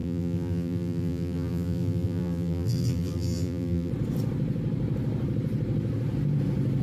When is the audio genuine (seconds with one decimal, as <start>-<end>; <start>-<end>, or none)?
3.9-6.8